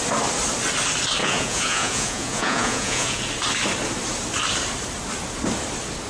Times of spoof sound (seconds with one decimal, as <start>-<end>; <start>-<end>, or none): 1.2-3.2